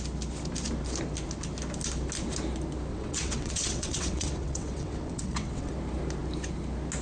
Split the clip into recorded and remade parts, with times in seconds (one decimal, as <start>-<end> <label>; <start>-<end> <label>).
0.0-2.9 recorded; 2.9-5.7 remade; 5.7-7.0 recorded